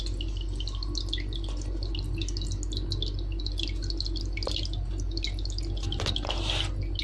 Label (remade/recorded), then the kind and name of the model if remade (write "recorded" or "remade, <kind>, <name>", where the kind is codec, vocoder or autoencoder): recorded